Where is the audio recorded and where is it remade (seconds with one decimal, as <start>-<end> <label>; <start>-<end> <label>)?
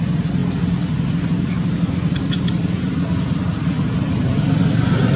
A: 0.0-5.2 recorded